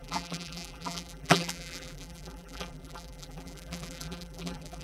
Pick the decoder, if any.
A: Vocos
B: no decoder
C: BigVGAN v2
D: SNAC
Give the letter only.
C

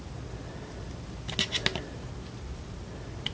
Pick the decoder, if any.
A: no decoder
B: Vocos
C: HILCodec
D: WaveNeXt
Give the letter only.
A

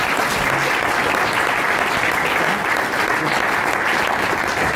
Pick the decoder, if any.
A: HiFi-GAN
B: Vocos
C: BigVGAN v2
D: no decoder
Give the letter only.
D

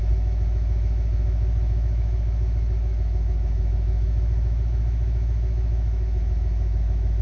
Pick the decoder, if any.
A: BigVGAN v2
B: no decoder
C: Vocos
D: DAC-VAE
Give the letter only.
D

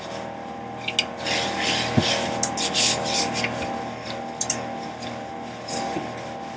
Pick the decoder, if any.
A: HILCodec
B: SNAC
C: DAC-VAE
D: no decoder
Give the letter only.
D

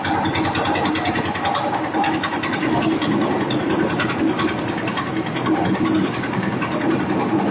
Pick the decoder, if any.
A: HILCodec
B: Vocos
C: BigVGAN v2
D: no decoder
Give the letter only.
D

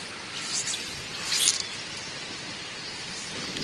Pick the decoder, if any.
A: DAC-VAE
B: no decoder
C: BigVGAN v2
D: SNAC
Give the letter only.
B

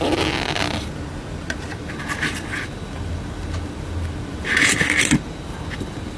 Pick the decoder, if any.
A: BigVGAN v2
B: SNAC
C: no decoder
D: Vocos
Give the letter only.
C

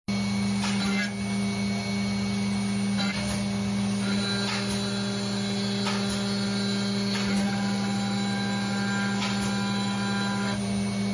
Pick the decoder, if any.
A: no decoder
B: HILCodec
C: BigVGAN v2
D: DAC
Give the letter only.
A